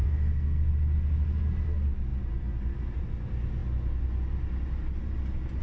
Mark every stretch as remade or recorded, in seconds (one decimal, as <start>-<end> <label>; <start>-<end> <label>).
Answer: 0.0-0.7 remade; 0.7-5.6 recorded